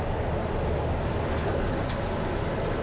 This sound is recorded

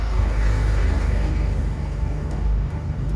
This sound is remade